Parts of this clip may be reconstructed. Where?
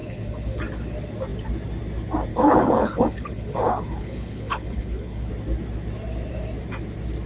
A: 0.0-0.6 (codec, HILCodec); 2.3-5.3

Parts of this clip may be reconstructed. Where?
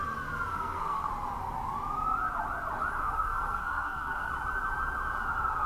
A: 0.5-1.1 (codec, SNAC); 3.0-4.3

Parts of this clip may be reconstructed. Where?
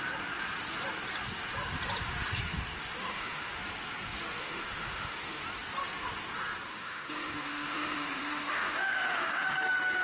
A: 3.0-3.6 (autoencoder, DAC-VAE); 4.4-5.4; 6.7-10.0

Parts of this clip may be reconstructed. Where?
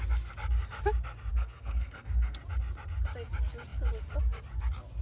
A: 1.3-2.4 (codec, SNAC)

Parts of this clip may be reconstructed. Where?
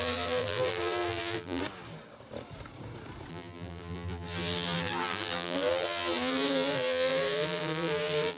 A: 0.0-1.6 (vocoder, BigVGAN v2); 3.3-8.4